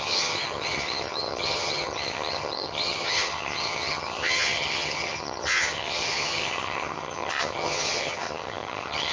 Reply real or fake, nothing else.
fake